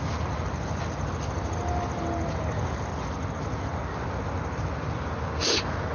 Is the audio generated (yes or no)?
no